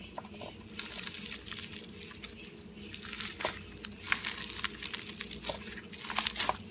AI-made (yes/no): no